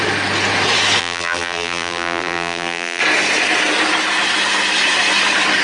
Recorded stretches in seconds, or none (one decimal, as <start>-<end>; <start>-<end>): 0.0-1.0; 3.0-5.6